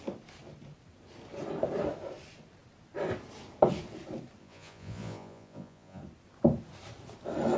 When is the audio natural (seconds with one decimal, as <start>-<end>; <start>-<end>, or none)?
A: 0.0-4.4; 6.0-7.6